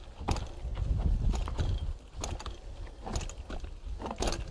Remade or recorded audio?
recorded